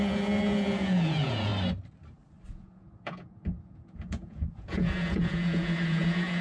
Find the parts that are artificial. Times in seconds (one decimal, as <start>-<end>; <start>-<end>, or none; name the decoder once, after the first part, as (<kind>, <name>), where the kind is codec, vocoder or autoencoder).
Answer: 0.0-1.5 (vocoder, Vocos); 2.5-6.4